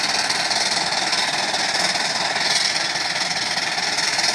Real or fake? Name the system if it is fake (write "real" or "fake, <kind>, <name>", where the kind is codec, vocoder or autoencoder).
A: real